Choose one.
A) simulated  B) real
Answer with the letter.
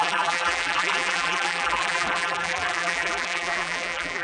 A